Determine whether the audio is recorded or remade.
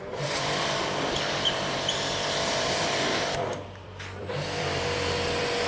remade